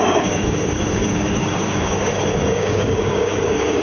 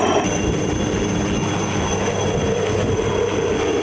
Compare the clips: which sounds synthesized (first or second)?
first